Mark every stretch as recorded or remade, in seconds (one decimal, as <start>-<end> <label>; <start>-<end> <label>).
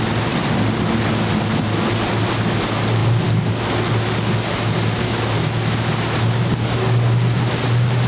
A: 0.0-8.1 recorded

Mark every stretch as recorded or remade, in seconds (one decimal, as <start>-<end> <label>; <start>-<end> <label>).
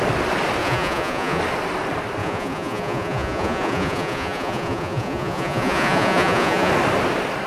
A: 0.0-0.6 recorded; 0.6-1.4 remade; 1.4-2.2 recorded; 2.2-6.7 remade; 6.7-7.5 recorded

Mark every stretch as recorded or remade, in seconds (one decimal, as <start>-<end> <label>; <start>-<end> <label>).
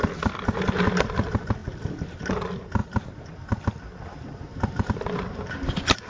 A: 0.0-6.1 recorded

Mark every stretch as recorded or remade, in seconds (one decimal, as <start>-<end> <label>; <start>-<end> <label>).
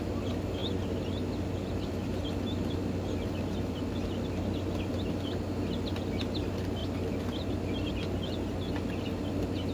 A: 0.0-9.7 recorded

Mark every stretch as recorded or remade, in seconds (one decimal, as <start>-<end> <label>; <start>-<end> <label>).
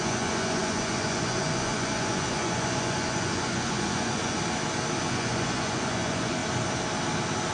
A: 0.0-4.4 remade; 4.4-5.0 recorded; 5.0-6.4 remade; 6.4-7.5 recorded